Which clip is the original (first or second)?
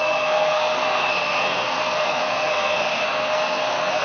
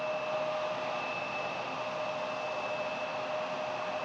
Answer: second